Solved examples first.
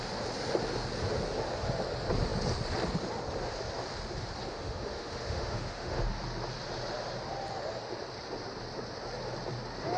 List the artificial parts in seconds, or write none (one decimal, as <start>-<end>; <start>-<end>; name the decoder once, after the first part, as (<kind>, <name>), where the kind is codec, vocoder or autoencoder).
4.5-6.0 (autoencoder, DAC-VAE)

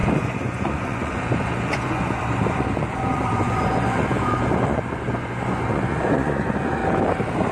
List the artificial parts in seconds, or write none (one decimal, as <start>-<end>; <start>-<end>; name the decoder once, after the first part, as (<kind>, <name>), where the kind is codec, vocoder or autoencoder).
0.0-6.8 (vocoder, Vocos)

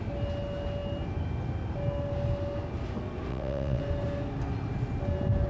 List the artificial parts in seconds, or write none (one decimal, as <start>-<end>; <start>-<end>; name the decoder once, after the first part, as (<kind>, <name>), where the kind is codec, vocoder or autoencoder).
3.3-3.8 (vocoder, WaveNeXt)

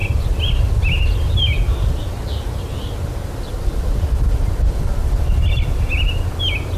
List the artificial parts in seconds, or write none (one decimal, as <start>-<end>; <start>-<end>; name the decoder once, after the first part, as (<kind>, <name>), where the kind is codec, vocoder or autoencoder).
none